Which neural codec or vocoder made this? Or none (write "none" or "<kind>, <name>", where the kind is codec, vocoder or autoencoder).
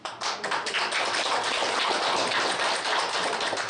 none